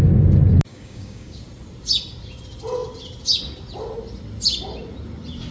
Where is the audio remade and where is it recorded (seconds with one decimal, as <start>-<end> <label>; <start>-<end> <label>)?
0.0-0.7 recorded; 0.7-1.4 remade; 1.4-5.5 recorded